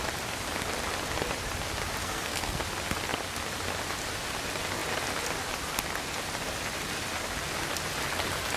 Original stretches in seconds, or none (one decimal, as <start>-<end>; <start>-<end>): 0.0-2.0; 2.6-8.6